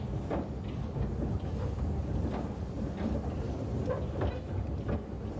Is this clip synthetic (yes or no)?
no